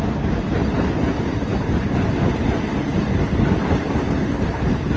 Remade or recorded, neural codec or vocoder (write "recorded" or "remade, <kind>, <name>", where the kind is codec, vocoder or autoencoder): recorded